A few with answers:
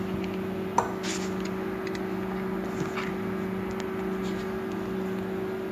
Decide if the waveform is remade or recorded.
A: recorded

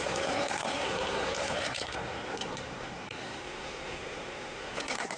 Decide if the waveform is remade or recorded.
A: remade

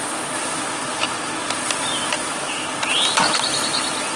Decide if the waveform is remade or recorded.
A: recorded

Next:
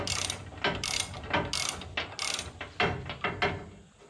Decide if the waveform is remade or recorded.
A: recorded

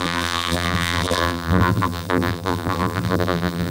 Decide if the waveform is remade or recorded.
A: remade